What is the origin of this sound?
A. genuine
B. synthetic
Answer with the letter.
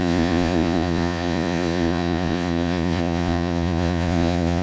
B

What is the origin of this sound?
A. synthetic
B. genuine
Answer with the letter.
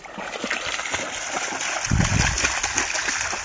B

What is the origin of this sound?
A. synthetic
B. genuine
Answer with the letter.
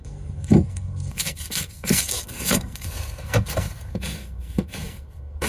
A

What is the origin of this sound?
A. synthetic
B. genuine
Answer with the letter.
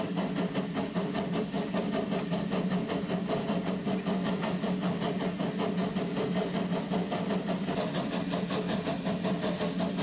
B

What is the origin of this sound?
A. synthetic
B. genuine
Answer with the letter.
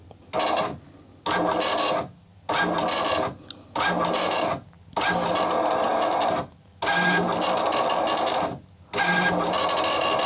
B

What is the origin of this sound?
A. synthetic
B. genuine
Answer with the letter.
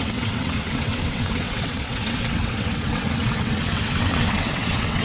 A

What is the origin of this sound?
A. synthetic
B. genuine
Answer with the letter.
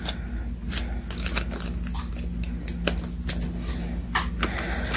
B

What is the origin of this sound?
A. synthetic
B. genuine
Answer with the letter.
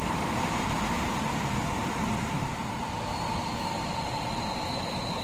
A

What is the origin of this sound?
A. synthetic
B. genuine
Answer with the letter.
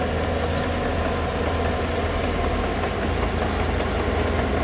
B